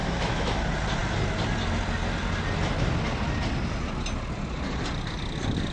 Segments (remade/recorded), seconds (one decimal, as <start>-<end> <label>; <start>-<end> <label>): 0.0-0.6 remade; 0.6-5.7 recorded